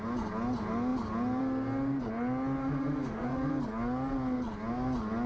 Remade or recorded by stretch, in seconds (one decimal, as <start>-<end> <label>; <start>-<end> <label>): 0.0-2.6 recorded; 2.6-3.5 remade; 3.5-5.3 recorded